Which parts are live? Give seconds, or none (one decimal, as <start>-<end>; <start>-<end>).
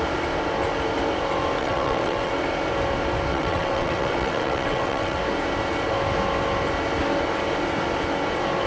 0.0-1.6; 2.3-3.3; 5.2-8.7